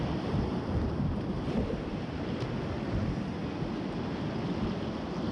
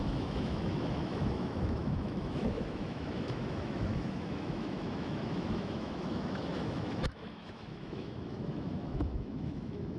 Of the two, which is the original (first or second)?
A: first